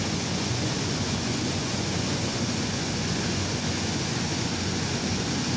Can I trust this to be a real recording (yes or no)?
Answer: no